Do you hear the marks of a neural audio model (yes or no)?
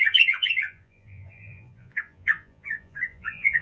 yes